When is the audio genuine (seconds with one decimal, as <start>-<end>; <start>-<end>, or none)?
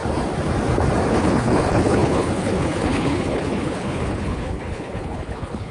0.0-1.1